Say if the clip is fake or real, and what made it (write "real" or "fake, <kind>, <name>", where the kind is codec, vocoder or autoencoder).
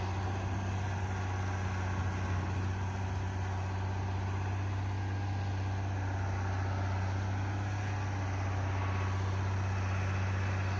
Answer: real